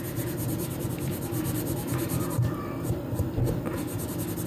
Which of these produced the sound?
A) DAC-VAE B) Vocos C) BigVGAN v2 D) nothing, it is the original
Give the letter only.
C